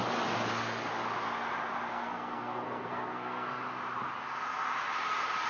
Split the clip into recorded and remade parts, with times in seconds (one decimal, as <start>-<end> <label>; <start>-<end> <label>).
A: 0.0-1.9 recorded; 1.9-3.6 remade; 3.6-5.5 recorded